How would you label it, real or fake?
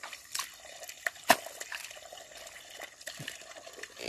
real